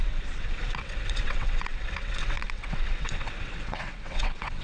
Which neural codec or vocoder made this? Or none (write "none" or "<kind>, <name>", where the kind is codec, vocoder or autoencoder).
vocoder, WaveNeXt